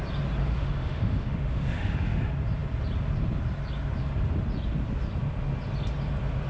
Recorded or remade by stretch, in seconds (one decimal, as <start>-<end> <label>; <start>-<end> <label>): 0.0-0.4 recorded; 0.4-2.2 remade; 2.2-6.5 recorded